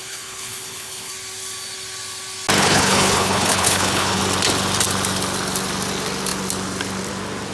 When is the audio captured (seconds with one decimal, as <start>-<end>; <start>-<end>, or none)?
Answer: 1.1-2.6; 4.2-7.5